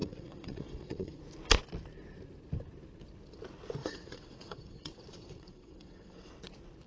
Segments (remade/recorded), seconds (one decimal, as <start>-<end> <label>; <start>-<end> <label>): 0.0-1.2 remade; 1.2-3.8 recorded; 3.8-6.3 remade; 6.3-6.9 recorded